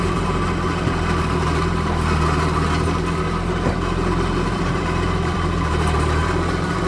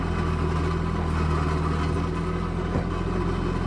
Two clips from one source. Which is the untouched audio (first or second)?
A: second